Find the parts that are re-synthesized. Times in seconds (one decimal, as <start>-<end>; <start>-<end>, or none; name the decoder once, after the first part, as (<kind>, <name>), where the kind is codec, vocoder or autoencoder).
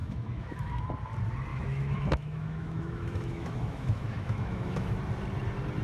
0.0-0.8 (autoencoder, DAC-VAE); 1.5-5.0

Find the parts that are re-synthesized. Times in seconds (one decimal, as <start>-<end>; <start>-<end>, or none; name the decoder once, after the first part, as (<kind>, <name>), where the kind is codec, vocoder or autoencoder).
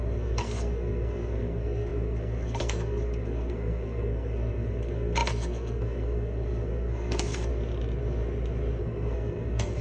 0.0-7.5 (codec, SNAC); 8.8-9.8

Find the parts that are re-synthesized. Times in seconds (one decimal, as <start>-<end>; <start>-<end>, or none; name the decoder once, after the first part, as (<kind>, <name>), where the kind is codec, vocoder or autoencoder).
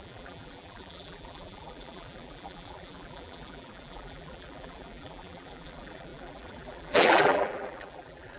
0.0-8.4 (vocoder, BigVGAN v2)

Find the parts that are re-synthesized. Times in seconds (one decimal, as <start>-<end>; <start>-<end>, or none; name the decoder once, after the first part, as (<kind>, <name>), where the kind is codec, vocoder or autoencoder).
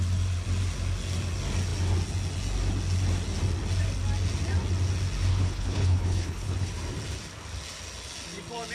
5.3-6.7 (codec, HILCodec)